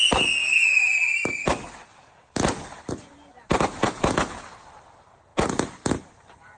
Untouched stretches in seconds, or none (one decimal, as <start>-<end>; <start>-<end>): 0.0-0.4; 2.9-6.6